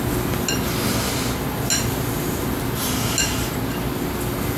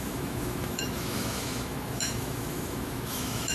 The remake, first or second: second